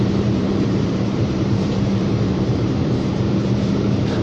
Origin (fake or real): fake